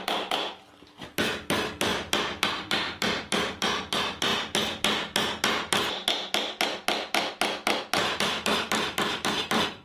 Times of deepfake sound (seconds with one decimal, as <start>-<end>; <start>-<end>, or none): 0.0-1.9; 2.5-4.3; 8.2-9.8